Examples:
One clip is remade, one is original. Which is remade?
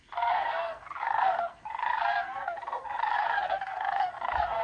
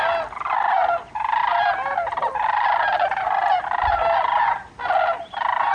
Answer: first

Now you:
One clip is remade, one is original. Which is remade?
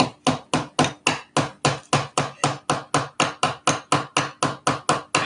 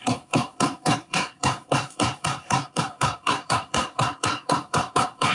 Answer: second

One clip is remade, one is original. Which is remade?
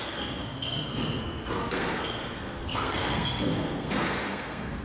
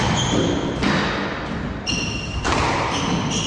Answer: first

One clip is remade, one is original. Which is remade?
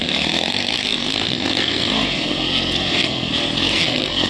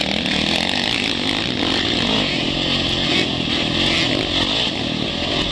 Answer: first